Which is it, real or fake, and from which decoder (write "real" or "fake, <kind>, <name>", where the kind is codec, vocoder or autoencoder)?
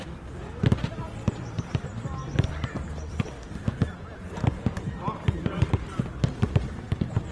fake, vocoder, BigVGAN v2